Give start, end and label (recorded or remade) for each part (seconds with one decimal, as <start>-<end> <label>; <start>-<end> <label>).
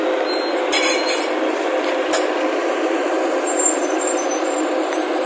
0.0-2.6 recorded; 2.6-4.6 remade; 4.6-5.3 recorded